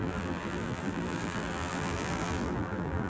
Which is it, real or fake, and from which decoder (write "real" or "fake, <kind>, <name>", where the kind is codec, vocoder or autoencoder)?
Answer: fake, vocoder, BigVGAN v2